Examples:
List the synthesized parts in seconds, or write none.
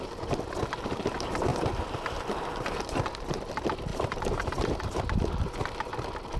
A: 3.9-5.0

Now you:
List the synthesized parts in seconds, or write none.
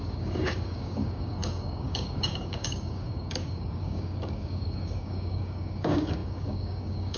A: 0.0-7.2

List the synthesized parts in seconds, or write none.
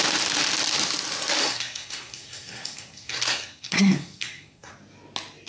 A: 1.4-4.7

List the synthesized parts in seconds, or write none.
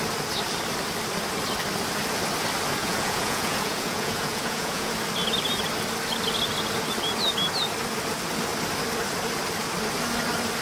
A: 2.8-4.9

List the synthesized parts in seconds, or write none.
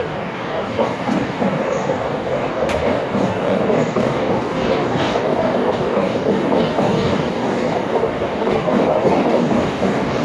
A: 0.0-10.2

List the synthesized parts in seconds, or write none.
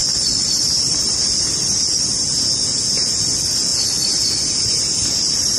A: 0.0-1.5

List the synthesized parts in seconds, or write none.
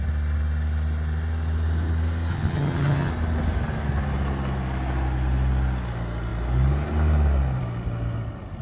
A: 2.3-3.1